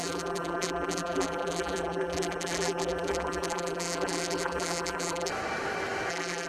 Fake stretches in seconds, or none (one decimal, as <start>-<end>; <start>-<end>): 0.0-5.3; 6.1-6.5